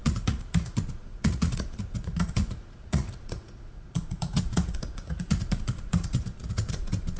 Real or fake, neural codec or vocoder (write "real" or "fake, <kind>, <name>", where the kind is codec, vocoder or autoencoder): fake, vocoder, Vocos